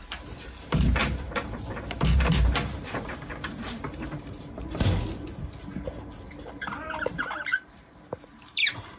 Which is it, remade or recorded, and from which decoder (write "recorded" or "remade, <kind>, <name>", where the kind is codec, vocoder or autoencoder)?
remade, vocoder, BigVGAN v2